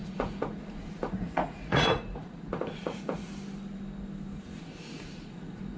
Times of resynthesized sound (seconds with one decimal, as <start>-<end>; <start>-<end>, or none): 0.0-3.3; 4.3-5.8